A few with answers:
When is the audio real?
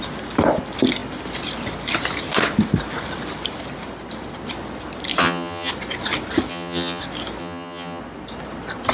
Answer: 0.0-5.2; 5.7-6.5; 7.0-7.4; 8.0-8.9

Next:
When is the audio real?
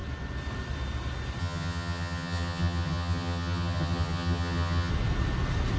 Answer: 0.0-1.4; 4.9-5.8